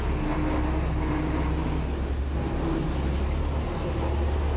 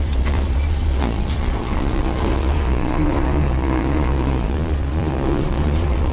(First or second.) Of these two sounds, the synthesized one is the second